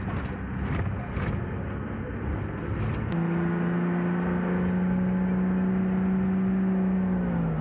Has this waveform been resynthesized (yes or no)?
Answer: no